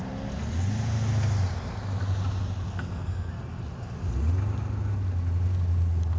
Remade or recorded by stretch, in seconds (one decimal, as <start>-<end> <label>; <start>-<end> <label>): 0.0-2.7 recorded; 2.7-3.3 remade; 3.3-6.2 recorded